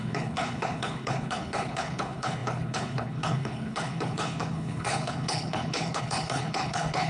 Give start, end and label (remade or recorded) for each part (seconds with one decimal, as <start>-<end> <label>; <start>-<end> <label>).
0.0-7.1 remade